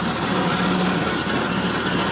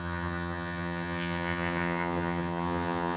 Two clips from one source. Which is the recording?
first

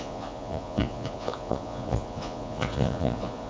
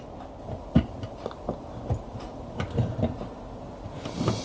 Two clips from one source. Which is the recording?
second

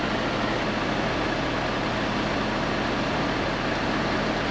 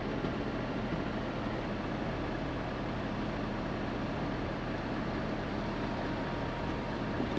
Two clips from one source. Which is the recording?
first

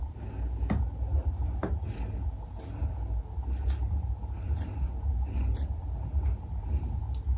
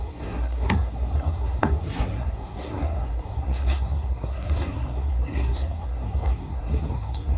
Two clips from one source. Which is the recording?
first